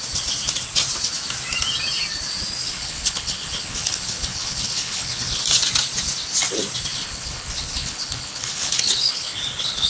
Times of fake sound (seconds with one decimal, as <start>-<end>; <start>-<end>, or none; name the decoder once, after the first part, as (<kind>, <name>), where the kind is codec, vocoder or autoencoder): 2.6-5.4 (codec, HILCodec); 6.9-9.9